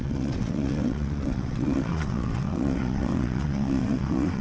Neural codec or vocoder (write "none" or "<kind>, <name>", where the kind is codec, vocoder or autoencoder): vocoder, WaveNeXt